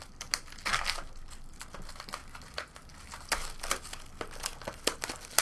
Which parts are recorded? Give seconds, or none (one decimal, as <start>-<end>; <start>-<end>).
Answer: 0.0-5.4